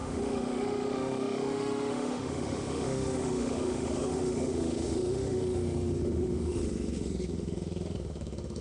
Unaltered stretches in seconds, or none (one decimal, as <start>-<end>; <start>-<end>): none